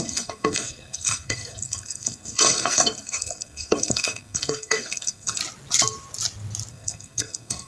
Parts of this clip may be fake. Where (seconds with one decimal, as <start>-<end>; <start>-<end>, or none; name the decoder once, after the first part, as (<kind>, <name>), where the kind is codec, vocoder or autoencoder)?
0.0-5.4 (codec, SNAC); 6.7-7.7